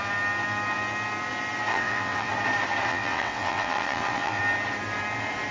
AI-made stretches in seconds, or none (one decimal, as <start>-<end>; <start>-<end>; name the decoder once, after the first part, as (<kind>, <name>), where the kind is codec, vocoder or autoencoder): 1.7-2.3 (vocoder, WaveNeXt); 2.9-4.4